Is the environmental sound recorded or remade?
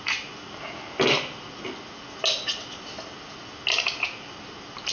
recorded